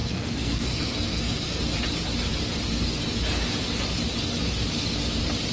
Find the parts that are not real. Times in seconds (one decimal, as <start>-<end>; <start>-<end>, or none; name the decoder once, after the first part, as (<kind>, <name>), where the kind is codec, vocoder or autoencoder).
0.0-1.6 (codec, SNAC)